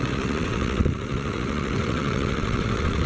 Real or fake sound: fake